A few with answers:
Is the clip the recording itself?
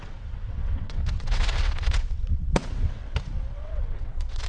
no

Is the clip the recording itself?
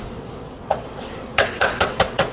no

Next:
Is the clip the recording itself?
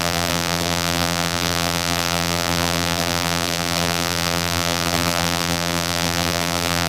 no